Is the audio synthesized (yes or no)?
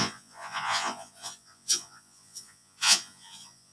yes